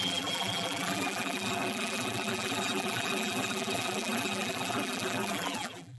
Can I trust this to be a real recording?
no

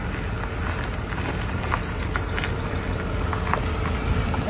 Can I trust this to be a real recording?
yes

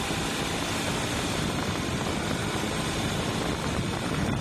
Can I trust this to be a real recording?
yes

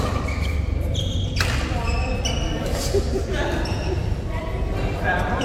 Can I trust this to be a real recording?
no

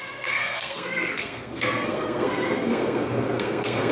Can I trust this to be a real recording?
no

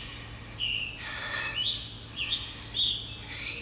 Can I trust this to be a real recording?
yes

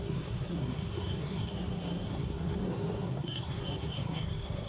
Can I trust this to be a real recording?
no